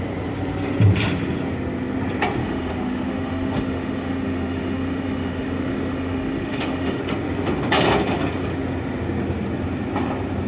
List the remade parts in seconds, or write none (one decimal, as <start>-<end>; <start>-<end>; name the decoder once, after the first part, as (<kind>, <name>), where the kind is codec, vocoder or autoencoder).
2.4-7.0 (autoencoder, DAC-VAE)